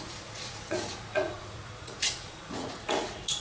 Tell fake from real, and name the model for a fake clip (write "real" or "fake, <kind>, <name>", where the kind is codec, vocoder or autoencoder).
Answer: fake, vocoder, Vocos